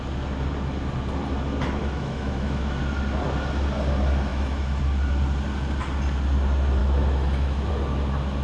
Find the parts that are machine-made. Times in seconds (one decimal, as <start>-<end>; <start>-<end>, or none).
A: 1.8-2.8; 4.3-4.8; 6.8-7.7